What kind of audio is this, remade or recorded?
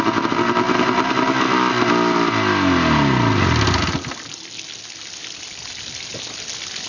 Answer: recorded